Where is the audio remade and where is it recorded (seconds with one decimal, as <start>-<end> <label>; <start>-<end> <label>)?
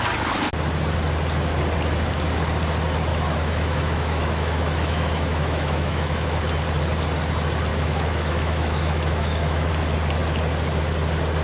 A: 0.0-3.1 recorded; 3.1-6.4 remade; 6.4-7.7 recorded; 7.7-9.7 remade; 9.7-11.4 recorded